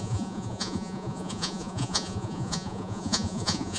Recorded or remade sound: remade